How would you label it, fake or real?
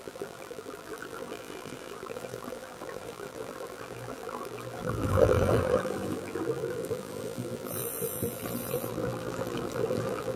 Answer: fake